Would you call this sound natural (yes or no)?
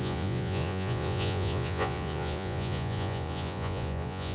no